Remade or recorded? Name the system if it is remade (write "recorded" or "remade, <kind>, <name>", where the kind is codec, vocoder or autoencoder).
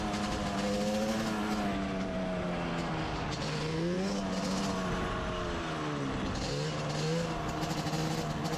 recorded